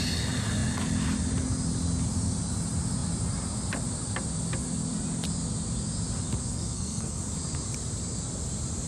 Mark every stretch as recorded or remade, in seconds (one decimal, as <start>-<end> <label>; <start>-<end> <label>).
0.0-6.4 recorded; 6.4-7.2 remade; 7.2-8.9 recorded